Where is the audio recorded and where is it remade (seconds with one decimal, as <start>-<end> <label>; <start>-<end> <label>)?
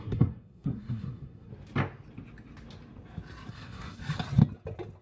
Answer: 0.0-1.5 remade; 1.5-3.5 recorded; 3.5-4.0 remade; 4.0-5.0 recorded